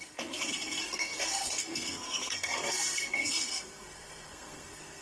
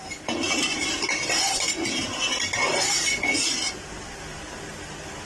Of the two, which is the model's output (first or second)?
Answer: first